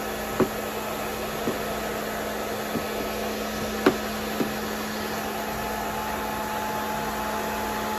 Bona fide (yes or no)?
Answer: yes